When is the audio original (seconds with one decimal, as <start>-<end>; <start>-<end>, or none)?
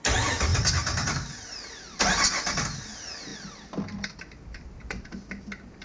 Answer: 0.0-5.8